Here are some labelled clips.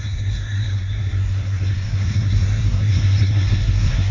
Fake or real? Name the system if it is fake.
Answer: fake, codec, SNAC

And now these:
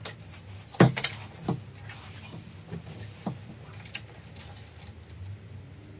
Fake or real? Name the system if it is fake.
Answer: real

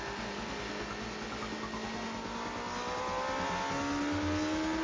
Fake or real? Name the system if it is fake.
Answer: real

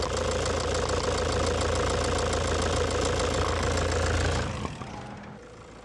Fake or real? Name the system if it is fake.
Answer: real